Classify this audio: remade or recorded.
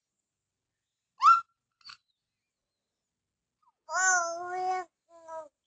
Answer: recorded